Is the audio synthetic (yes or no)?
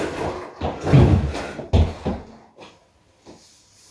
no